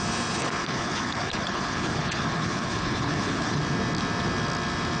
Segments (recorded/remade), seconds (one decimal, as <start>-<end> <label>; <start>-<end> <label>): 0.0-0.6 recorded; 0.6-3.6 remade; 3.6-5.0 recorded